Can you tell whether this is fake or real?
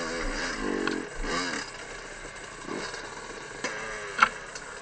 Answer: real